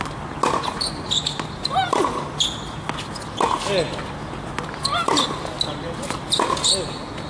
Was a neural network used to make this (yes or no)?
no